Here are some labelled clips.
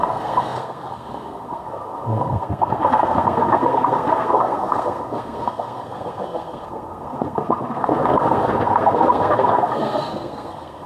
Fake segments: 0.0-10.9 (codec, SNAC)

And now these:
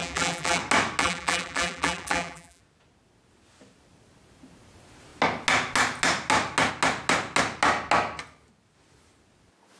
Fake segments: 0.0-0.6 (vocoder, BigVGAN v2); 1.0-2.6